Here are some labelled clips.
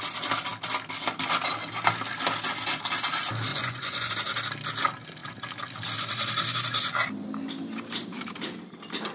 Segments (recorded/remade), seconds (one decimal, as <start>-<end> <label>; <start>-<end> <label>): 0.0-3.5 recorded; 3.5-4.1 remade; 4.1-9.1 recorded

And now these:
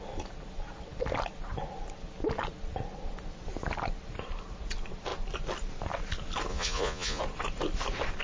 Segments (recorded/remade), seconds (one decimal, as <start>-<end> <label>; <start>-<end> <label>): 0.0-6.5 recorded; 6.5-7.2 remade; 7.2-8.2 recorded

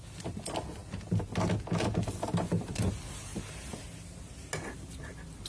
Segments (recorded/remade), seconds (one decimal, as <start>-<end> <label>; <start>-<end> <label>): 0.0-5.5 recorded